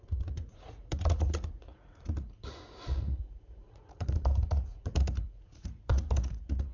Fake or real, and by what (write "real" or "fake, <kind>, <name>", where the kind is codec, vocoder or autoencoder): fake, vocoder, Vocos